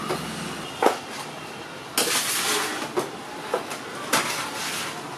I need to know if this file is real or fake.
real